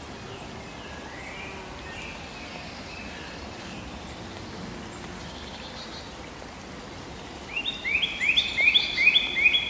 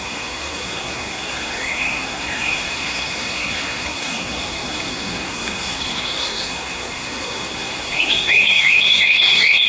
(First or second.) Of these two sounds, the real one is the first